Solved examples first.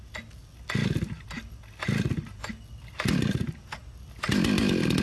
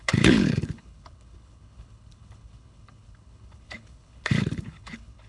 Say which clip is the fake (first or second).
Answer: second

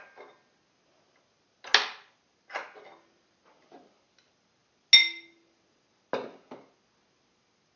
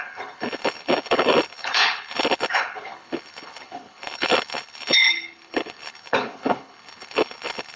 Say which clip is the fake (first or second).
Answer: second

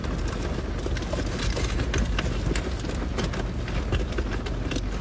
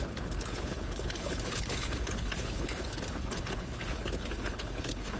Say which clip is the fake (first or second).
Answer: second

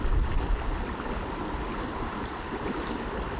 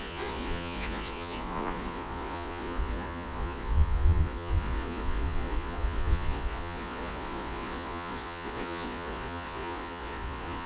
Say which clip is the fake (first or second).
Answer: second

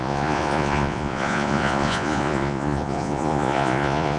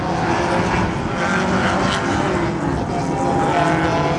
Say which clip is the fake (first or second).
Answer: first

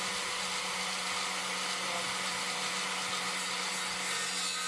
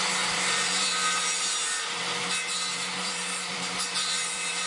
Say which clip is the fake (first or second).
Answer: second